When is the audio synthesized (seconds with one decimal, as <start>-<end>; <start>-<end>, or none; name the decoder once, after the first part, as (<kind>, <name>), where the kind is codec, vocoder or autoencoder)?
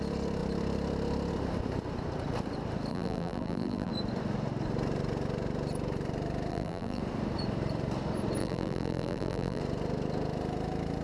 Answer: 2.9-3.9 (vocoder, BigVGAN v2); 6.5-7.0; 8.4-9.6